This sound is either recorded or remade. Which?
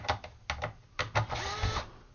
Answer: recorded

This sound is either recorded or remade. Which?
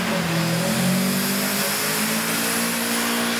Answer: recorded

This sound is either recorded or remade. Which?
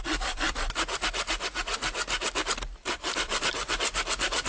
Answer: recorded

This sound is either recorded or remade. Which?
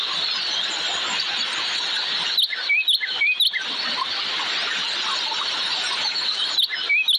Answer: recorded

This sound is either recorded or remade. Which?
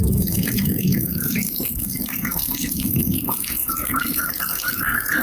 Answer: remade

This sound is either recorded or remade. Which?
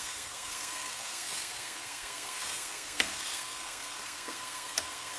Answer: remade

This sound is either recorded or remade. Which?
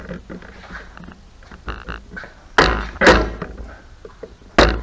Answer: recorded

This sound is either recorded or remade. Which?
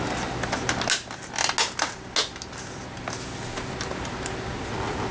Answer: recorded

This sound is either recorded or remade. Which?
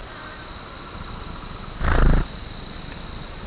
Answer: recorded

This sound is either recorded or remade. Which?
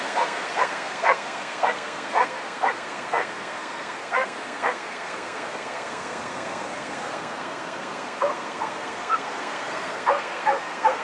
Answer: remade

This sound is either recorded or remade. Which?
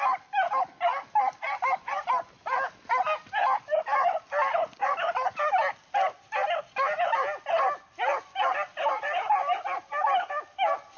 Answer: recorded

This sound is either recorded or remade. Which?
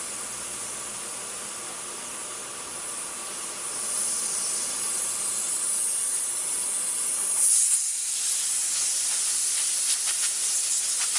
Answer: recorded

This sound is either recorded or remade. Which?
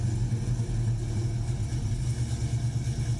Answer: recorded